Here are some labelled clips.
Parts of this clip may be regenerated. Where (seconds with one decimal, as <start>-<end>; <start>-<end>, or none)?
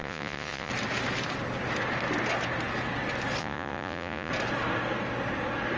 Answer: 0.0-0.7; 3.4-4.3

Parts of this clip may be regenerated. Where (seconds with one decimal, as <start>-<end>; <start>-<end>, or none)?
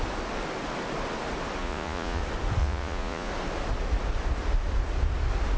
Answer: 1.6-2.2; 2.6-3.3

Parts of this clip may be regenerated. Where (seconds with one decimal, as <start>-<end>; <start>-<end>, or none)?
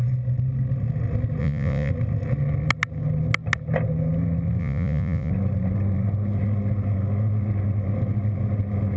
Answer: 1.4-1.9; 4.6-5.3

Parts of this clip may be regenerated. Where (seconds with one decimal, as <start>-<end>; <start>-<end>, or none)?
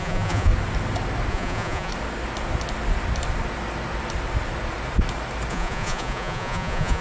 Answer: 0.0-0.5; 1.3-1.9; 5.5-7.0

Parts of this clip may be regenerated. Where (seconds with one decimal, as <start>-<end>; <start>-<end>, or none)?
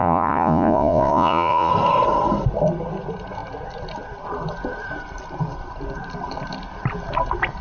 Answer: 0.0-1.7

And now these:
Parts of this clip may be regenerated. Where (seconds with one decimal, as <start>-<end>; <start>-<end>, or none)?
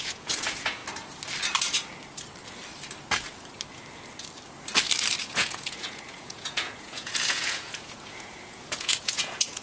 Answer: 0.0-0.8; 5.2-9.6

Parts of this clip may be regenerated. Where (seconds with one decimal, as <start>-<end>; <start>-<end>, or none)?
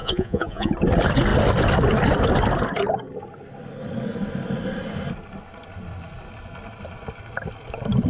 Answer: 0.0-0.7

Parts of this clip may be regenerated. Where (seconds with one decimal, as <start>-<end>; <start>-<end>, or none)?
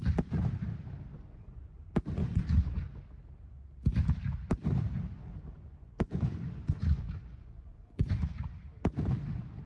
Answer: 1.1-1.8; 2.2-3.0; 5.3-8.4